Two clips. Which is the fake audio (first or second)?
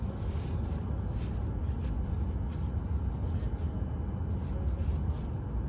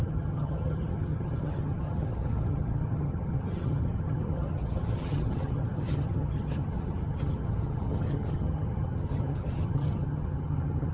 second